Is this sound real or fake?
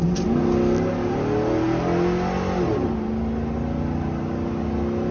real